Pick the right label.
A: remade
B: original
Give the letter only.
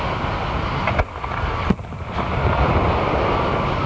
B